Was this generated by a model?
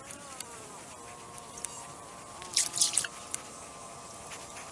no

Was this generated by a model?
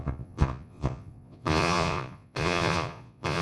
yes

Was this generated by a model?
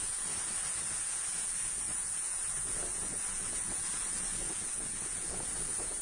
yes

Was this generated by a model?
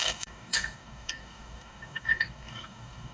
yes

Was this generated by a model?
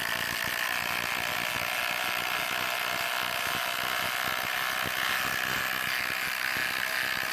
no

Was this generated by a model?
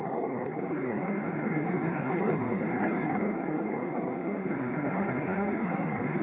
yes